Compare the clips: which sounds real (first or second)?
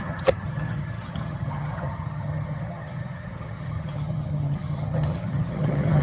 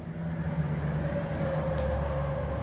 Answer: second